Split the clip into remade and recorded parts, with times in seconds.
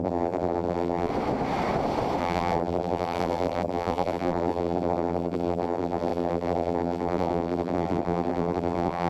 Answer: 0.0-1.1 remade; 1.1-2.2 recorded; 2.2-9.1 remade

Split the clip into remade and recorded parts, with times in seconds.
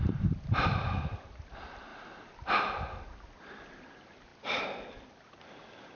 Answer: 0.0-6.0 recorded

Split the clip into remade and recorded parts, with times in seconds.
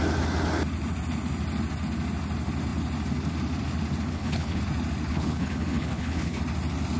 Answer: 0.0-4.1 recorded; 4.1-4.6 remade; 4.6-5.1 recorded; 5.1-6.4 remade; 6.4-7.0 recorded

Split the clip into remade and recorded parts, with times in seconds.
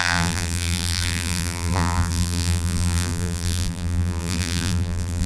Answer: 0.0-5.3 remade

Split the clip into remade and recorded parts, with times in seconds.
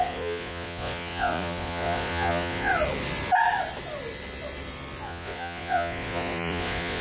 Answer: 0.0-2.7 remade; 2.7-5.0 recorded; 5.0-7.0 remade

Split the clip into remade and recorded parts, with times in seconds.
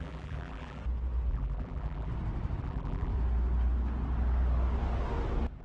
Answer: 0.0-0.8 remade; 0.8-1.3 recorded; 1.3-2.1 remade; 2.1-2.6 recorded; 2.6-3.1 remade; 3.1-5.6 recorded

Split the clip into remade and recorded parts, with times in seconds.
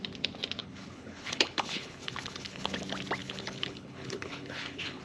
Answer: 0.0-0.6 recorded; 0.6-2.8 remade; 2.8-3.2 recorded; 3.2-5.0 remade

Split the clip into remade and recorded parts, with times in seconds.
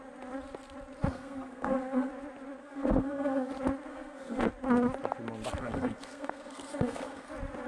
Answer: 0.0-1.1 recorded; 1.1-2.1 remade; 2.1-2.6 recorded; 2.6-3.5 remade; 3.5-3.9 recorded; 3.9-4.5 remade; 4.5-5.6 recorded; 5.6-7.3 remade; 7.3-7.7 recorded